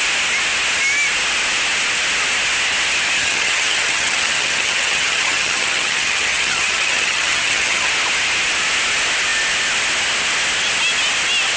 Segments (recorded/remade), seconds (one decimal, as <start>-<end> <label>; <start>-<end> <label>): 0.0-3.2 recorded; 3.2-7.9 remade; 7.9-11.6 recorded

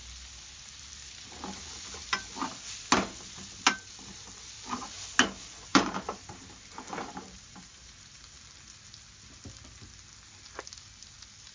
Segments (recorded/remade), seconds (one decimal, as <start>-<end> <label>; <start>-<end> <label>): 0.0-5.7 recorded; 5.7-8.3 remade; 8.3-11.5 recorded

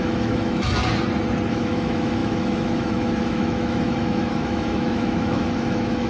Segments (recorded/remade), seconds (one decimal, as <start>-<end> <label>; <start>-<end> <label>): 0.0-0.8 remade; 0.8-1.5 recorded; 1.5-6.1 remade